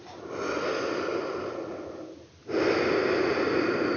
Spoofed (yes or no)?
no